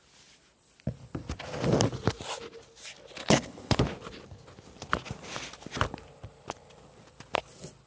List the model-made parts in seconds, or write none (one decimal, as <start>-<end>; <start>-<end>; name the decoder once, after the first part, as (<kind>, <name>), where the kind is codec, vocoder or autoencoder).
3.2-3.8 (codec, HILCodec)